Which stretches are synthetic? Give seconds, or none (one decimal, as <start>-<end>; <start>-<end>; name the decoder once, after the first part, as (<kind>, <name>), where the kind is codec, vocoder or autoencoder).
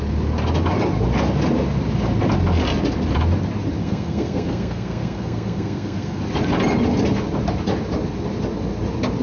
3.8-6.2 (codec, SNAC)